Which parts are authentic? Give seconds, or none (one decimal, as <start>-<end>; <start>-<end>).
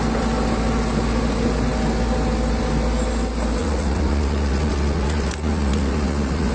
0.0-3.6